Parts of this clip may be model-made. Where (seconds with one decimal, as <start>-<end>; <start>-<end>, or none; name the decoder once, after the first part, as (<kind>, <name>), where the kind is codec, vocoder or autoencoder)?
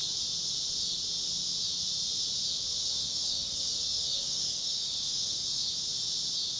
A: 3.0-5.7 (codec, DAC)